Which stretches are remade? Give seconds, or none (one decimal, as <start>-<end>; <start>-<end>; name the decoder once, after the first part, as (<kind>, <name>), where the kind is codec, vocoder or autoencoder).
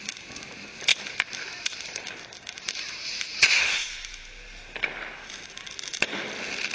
0.9-4.9 (vocoder, BigVGAN v2)